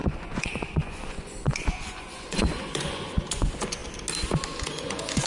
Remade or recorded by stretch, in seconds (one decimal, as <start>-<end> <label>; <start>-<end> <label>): 0.0-3.8 remade; 3.8-4.6 recorded; 4.6-5.3 remade